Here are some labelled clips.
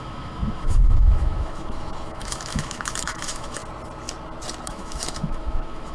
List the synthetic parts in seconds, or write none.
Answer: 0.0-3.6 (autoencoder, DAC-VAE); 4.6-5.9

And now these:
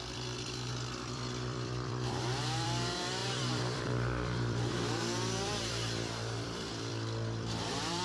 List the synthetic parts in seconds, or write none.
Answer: 0.0-8.0 (vocoder, BigVGAN v2)

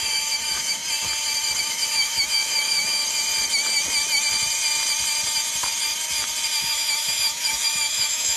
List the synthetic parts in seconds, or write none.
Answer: 0.0-0.8 (autoencoder, DAC-VAE); 1.6-3.0; 6.6-8.4